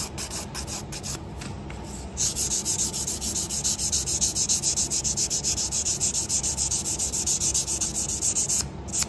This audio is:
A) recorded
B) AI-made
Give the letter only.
A